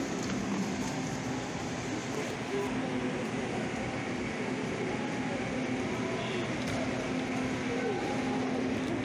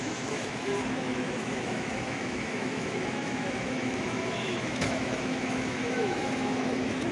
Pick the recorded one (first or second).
first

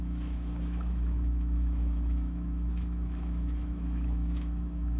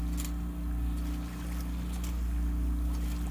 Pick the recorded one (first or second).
second